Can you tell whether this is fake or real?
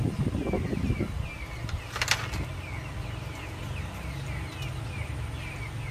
real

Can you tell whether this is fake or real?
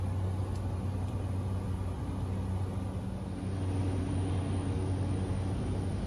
real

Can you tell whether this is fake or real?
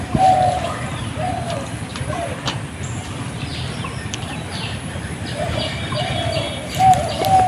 fake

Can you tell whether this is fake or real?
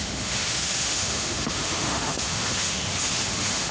fake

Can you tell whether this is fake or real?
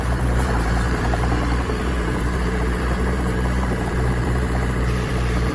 fake